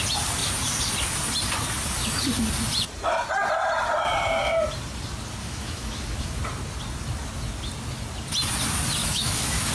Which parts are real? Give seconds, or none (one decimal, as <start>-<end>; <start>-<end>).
0.0-5.4; 6.4-9.0